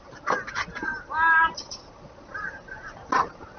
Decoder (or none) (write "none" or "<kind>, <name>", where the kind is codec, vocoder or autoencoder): none